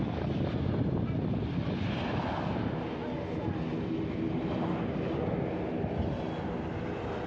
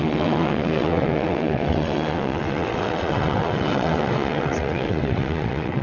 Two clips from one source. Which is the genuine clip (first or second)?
first